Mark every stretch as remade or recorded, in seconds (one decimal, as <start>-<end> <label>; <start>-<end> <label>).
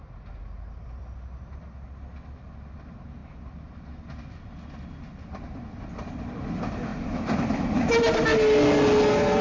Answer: 0.0-9.4 recorded